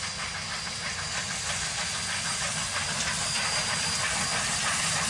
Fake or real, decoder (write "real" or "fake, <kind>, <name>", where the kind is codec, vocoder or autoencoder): real